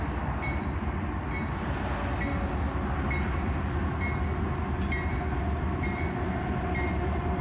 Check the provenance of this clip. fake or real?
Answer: real